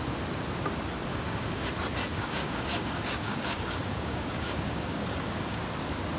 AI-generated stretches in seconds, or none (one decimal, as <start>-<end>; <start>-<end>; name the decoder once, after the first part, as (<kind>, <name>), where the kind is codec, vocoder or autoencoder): 1.1-1.7 (codec, DAC); 2.1-5.6